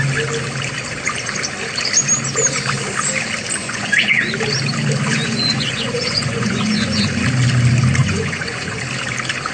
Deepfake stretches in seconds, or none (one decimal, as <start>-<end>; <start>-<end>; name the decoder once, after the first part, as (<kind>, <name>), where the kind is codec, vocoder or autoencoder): 3.6-4.3 (vocoder, Vocos); 5.1-7.1; 8.0-8.8